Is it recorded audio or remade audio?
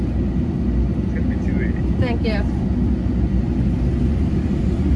recorded